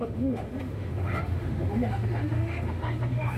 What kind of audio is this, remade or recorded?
remade